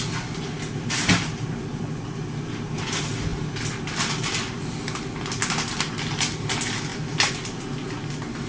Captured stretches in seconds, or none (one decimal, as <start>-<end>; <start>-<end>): 0.0-8.5